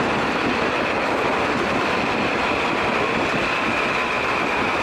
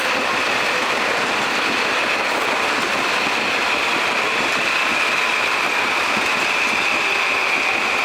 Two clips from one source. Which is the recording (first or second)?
first